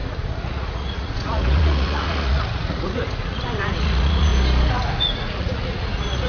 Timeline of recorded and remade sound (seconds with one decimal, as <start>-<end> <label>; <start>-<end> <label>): 0.0-4.3 remade; 4.3-5.0 recorded; 5.0-6.3 remade